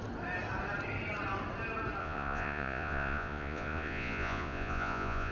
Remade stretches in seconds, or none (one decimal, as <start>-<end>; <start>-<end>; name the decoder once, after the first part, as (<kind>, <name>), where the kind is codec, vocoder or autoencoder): 2.0-5.3 (vocoder, Vocos)